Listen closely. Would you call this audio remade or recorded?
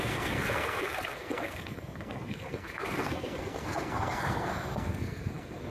remade